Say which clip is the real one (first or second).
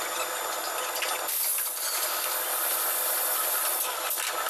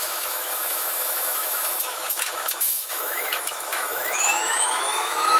first